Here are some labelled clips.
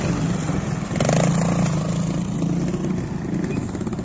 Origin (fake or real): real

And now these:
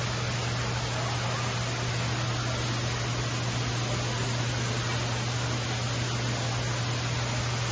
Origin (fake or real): real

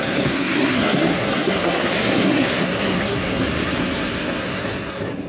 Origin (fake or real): fake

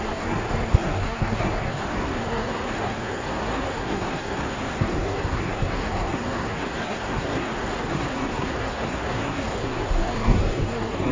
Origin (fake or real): fake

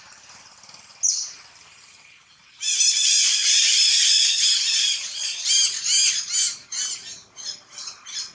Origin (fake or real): real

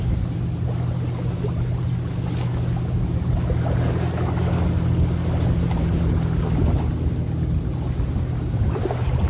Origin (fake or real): real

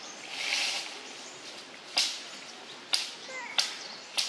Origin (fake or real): real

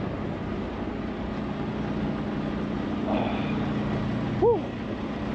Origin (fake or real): real